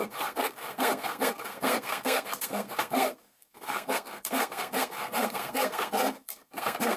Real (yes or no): no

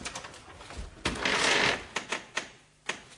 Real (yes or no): yes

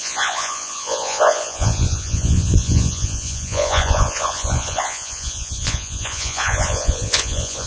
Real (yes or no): no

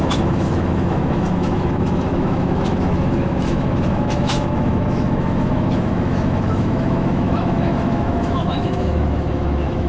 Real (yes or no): no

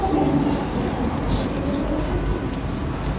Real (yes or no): yes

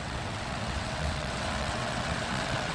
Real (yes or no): no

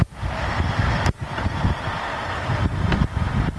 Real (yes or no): yes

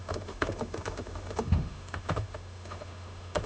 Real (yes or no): no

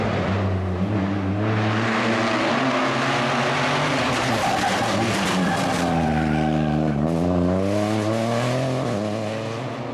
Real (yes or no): yes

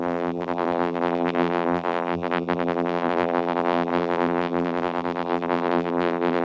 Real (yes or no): no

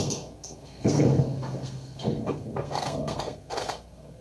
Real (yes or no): no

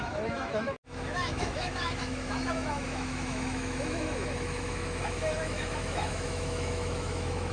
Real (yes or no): no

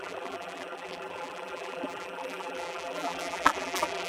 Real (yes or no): no